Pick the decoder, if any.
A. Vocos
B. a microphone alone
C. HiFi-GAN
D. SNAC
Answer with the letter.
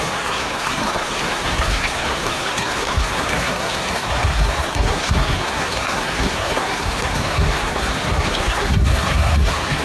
D